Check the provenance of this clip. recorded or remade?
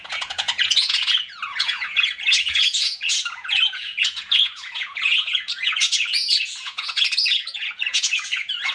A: remade